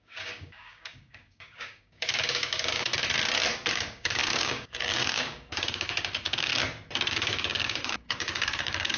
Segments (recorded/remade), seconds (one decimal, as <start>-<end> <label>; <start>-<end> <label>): 0.0-2.9 remade; 2.9-3.7 recorded; 3.7-6.5 remade; 6.5-7.1 recorded; 7.1-9.0 remade